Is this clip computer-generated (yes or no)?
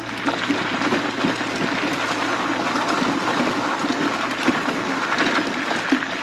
no